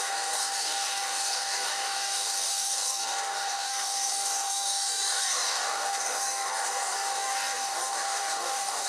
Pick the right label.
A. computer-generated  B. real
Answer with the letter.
A